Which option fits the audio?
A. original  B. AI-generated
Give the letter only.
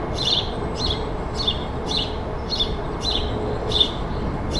A